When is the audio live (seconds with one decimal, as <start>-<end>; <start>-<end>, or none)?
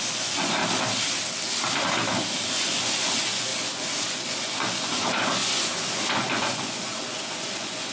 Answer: 0.6-2.5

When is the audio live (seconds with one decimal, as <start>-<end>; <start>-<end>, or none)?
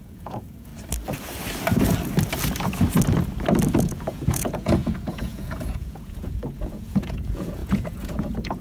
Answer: 0.7-3.8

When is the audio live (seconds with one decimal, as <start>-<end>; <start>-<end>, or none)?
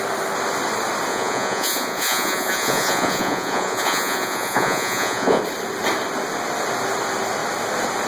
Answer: 0.0-1.1; 5.4-8.1